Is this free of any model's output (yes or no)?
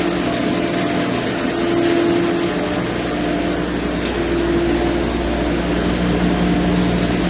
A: yes